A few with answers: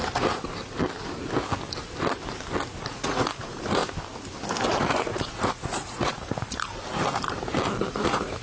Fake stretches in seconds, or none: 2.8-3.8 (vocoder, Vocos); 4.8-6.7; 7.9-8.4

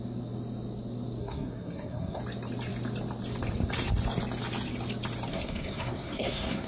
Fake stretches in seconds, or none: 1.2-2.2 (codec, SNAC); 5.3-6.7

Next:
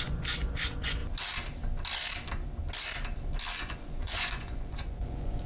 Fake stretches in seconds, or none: 0.0-1.0 (vocoder, Vocos); 3.6-5.5

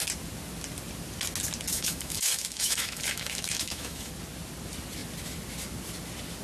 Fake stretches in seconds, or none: 1.7-4.1 (autoencoder, DAC-VAE)